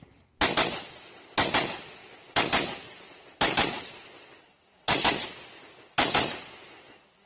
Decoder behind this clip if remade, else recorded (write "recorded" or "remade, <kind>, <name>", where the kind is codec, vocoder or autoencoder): recorded